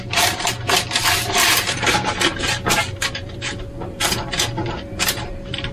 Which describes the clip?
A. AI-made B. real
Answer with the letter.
A